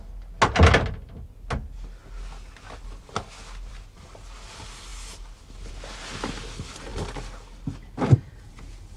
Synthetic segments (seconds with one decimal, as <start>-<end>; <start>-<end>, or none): none